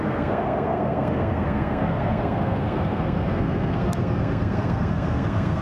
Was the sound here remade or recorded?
remade